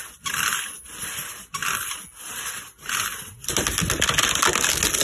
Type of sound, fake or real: real